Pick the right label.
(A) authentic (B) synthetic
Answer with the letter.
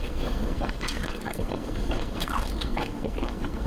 B